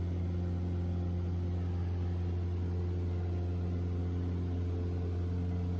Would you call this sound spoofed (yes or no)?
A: no